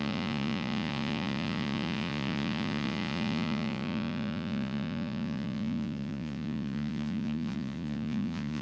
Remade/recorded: remade